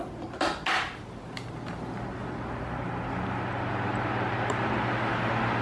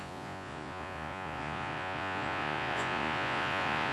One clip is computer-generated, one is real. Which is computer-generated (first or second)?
second